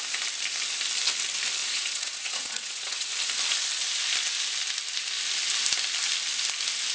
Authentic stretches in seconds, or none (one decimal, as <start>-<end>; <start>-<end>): 0.0-1.6; 3.1-6.9